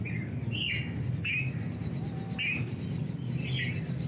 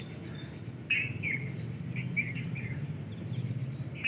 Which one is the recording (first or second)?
first